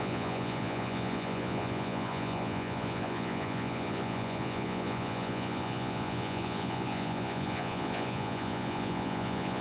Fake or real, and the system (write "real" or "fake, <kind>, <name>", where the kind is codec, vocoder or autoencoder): fake, vocoder, Vocos